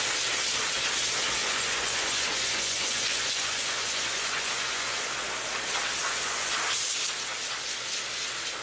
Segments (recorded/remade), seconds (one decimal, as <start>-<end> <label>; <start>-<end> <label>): 0.0-1.4 recorded; 1.4-5.1 remade; 5.1-6.0 recorded; 6.0-6.5 remade; 6.5-8.6 recorded